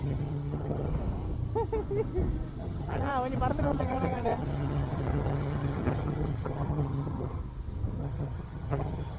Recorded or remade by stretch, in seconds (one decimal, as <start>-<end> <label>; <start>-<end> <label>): 0.0-0.9 remade; 0.9-2.6 recorded; 2.6-3.1 remade; 3.1-3.6 recorded; 3.6-7.4 remade; 7.4-8.0 recorded; 8.0-9.2 remade